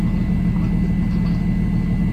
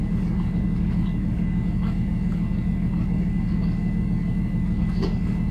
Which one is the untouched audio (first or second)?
first